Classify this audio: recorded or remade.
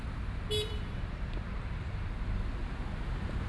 recorded